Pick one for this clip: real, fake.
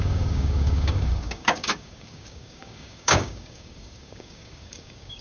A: fake